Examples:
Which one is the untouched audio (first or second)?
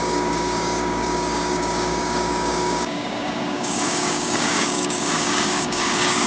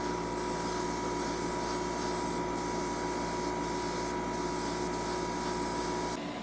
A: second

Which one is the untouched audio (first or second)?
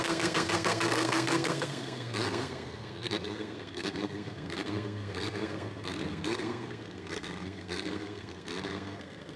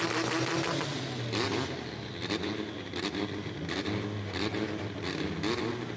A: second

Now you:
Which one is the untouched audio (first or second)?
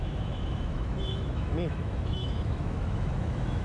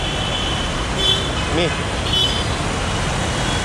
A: second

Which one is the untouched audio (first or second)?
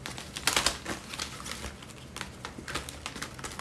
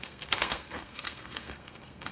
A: first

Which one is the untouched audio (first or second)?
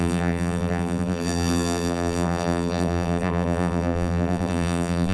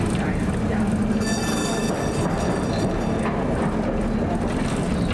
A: second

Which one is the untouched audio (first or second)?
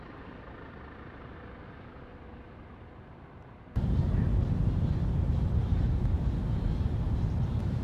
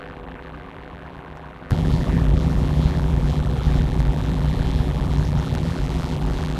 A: first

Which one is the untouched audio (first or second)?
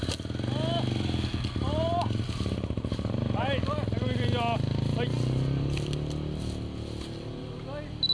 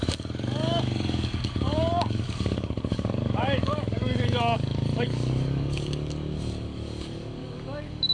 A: first